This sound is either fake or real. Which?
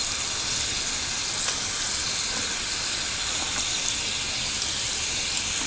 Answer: real